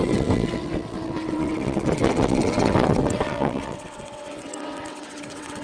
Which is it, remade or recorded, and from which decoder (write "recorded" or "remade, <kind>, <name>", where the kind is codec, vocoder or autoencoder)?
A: remade, vocoder, WaveNeXt